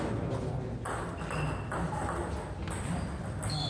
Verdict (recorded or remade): recorded